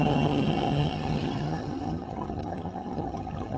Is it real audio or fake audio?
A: fake